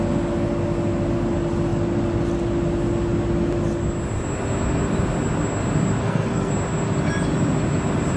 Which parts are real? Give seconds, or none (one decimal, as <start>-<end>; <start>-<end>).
0.0-6.0; 6.5-8.2